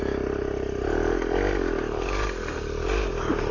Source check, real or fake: real